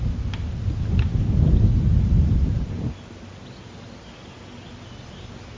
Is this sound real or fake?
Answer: real